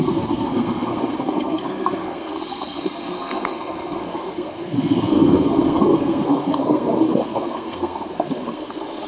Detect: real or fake fake